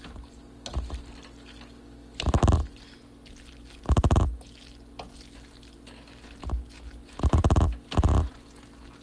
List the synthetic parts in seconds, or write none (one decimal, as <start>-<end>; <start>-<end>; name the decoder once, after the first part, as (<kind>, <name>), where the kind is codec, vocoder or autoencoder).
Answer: none